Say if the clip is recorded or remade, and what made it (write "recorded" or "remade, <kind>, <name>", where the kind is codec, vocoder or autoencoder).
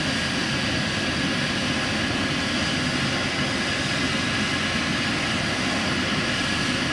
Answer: recorded